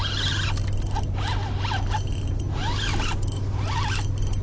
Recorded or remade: recorded